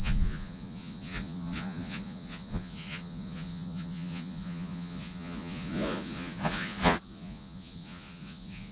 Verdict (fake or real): fake